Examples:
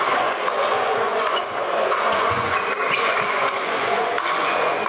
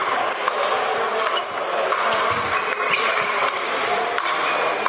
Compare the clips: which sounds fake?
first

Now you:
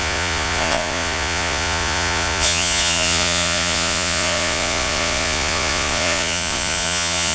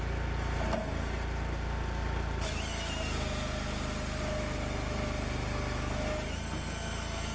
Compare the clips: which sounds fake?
first